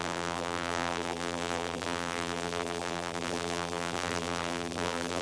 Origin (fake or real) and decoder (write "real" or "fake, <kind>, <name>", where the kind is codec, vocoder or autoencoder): fake, vocoder, BigVGAN v2